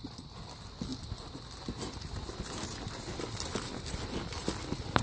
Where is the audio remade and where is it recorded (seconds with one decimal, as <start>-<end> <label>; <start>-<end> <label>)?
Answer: 0.0-5.0 recorded

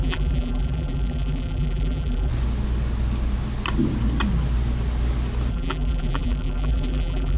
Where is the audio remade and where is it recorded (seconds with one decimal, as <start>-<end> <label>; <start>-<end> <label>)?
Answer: 0.0-2.3 remade; 2.3-5.5 recorded; 5.5-7.4 remade

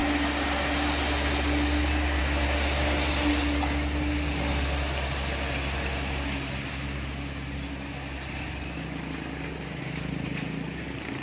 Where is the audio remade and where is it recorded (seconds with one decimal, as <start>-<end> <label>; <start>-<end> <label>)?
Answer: 0.0-11.2 recorded

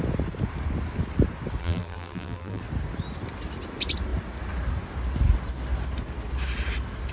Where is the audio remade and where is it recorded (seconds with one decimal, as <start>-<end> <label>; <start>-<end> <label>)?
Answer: 0.0-1.6 recorded; 1.6-2.6 remade; 2.6-7.1 recorded

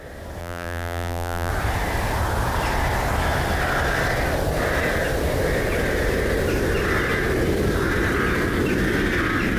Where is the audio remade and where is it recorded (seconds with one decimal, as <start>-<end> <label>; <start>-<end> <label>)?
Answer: 0.0-0.4 recorded; 0.4-1.5 remade; 1.5-9.6 recorded

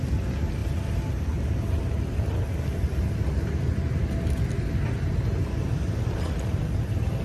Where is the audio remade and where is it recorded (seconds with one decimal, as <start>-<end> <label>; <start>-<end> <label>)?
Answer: 0.0-7.2 recorded

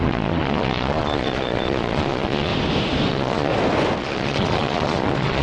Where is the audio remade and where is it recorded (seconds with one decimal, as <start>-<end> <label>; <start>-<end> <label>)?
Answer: 0.0-2.5 remade; 2.5-3.1 recorded; 3.1-3.5 remade; 3.5-4.0 recorded; 4.0-5.4 remade